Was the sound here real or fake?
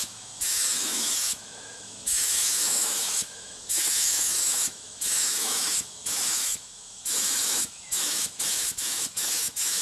fake